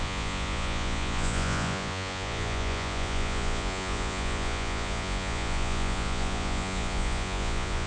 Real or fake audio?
fake